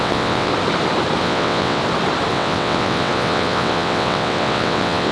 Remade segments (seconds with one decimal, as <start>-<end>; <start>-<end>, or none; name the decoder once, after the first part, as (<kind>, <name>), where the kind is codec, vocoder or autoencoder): 0.0-0.5 (vocoder, WaveNeXt); 1.2-1.8; 2.3-5.1